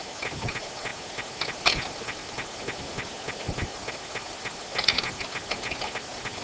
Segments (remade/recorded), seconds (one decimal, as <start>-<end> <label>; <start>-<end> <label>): 0.0-6.4 recorded